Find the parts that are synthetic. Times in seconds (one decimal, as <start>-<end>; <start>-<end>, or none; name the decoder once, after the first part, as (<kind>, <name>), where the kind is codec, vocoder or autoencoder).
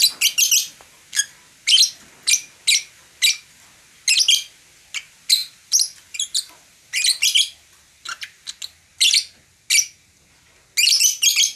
5.4-8.5 (vocoder, BigVGAN v2)